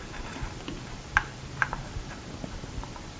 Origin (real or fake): fake